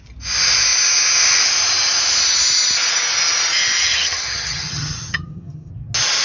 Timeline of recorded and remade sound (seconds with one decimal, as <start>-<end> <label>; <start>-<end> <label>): 0.0-3.8 recorded; 3.8-5.7 remade; 5.7-6.2 recorded